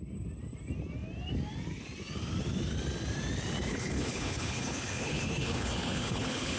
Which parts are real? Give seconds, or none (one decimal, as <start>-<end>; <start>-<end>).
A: 0.0-3.7